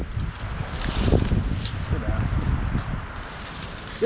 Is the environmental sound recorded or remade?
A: recorded